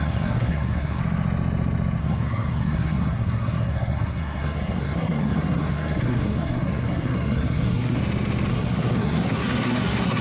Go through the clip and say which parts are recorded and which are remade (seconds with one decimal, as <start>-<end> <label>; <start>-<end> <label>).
0.0-1.0 remade; 1.0-2.0 recorded; 2.0-8.0 remade; 8.0-8.5 recorded; 8.5-10.2 remade